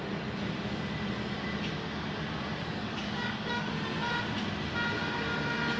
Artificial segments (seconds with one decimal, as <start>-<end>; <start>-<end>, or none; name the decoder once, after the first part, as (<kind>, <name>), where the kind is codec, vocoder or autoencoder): 2.5-3.7 (codec, DAC)

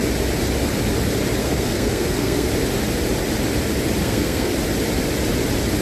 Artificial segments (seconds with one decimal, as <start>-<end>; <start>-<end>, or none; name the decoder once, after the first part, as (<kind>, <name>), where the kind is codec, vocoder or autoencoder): 1.4-2.5 (codec, SNAC); 4.0-4.5

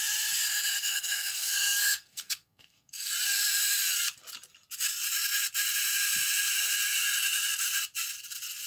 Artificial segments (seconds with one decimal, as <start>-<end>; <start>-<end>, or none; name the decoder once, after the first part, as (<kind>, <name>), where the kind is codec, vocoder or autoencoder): 0.8-3.1 (codec, SNAC)

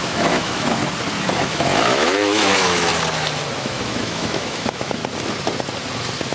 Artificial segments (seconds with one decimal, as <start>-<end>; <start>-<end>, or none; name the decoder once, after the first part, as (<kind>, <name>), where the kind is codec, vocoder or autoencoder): 0.0-0.8 (autoencoder, DAC-VAE); 1.4-2.9; 3.6-5.0

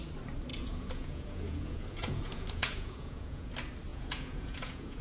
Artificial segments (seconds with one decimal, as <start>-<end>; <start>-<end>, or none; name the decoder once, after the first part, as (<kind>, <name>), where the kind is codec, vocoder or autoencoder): 0.5-3.5 (vocoder, Vocos); 3.9-5.0

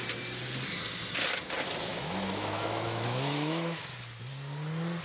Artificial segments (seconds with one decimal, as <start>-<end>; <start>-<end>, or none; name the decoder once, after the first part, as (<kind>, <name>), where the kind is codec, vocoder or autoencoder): 1.9-3.8 (autoencoder, DAC-VAE)